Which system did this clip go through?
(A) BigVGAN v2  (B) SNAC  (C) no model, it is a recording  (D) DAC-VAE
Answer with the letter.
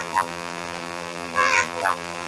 A